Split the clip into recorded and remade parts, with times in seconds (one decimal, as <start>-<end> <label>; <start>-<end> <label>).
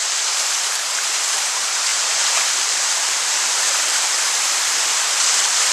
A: 0.0-5.7 remade